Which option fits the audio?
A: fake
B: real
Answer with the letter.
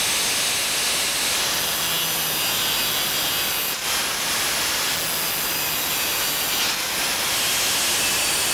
B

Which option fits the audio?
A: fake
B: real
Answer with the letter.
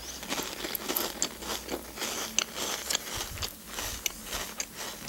B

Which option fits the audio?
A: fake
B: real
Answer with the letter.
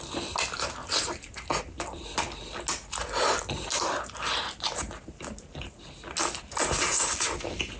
B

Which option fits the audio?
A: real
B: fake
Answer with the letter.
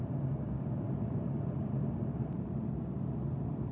A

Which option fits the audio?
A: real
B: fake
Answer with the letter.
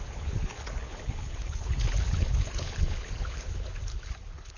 B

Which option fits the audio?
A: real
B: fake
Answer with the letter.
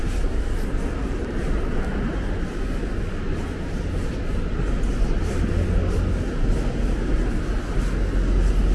A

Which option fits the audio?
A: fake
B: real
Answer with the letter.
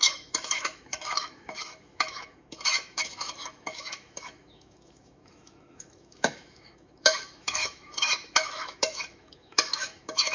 A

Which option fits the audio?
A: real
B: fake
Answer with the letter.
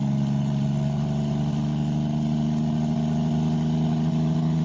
A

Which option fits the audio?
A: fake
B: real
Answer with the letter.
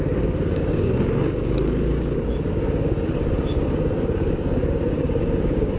A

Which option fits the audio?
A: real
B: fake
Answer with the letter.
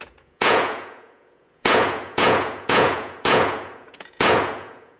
B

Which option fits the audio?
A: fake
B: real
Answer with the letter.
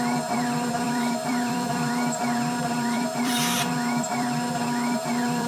A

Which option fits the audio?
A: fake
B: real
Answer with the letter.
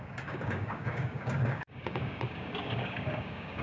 A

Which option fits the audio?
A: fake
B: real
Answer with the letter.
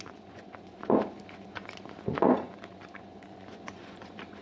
A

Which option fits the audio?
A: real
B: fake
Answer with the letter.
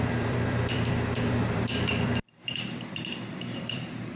B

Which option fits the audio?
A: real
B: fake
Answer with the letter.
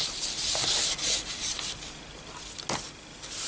A